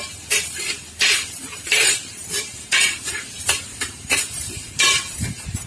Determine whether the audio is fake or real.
fake